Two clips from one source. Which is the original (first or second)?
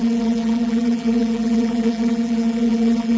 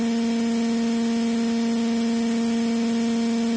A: second